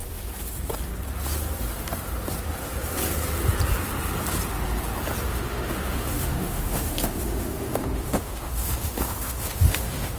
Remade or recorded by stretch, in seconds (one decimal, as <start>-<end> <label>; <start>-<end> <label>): 0.0-5.3 recorded; 5.3-10.2 remade

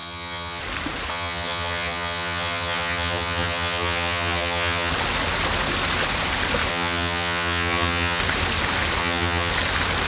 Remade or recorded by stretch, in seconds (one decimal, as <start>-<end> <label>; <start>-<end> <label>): 0.0-0.6 remade; 0.6-1.1 recorded; 1.1-4.9 remade; 4.9-6.7 recorded; 6.7-8.2 remade; 8.2-9.0 recorded; 9.0-9.5 remade; 9.5-10.1 recorded

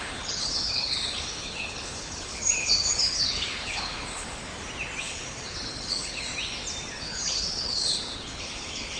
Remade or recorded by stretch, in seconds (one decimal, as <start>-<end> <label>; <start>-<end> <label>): 0.0-4.5 remade; 4.5-5.0 recorded; 5.0-6.3 remade; 6.3-6.9 recorded; 6.9-9.0 remade

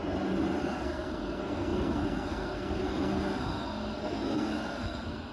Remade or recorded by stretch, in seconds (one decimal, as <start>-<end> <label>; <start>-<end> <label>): 0.0-0.6 recorded; 0.6-5.3 remade